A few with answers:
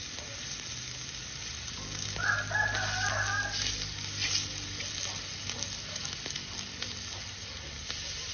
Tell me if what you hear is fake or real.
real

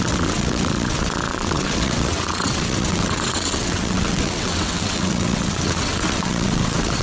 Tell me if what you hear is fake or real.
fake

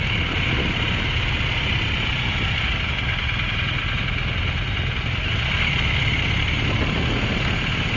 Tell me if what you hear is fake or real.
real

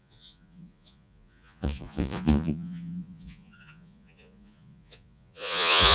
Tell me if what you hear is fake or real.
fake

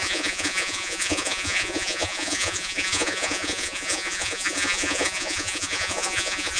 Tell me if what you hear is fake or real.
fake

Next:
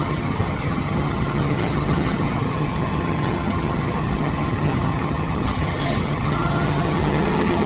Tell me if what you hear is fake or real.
fake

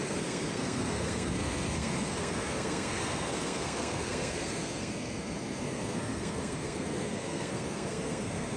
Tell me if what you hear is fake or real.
fake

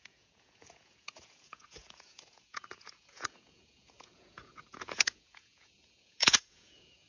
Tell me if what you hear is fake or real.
fake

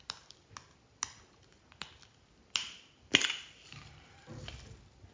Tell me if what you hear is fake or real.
real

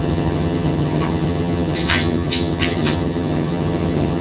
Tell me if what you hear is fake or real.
fake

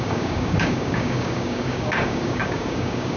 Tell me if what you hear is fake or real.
fake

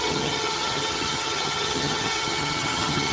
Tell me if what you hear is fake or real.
fake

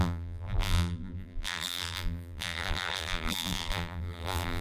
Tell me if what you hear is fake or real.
fake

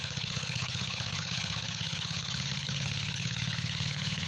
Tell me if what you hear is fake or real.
fake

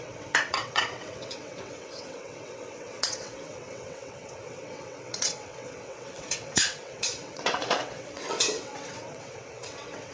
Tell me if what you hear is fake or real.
fake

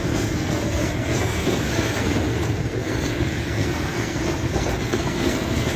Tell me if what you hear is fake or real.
fake